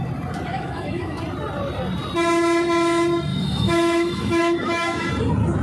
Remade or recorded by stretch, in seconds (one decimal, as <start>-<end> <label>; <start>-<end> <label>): 0.0-0.5 recorded; 0.5-1.2 remade; 1.2-3.3 recorded; 3.3-5.1 remade; 5.1-5.6 recorded